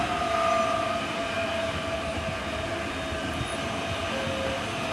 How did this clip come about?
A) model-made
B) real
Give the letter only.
B